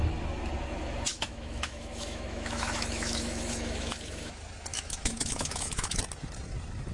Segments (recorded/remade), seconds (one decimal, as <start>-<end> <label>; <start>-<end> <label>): 0.0-1.1 recorded; 1.1-4.3 remade; 4.3-4.7 recorded; 4.7-6.0 remade; 6.0-6.9 recorded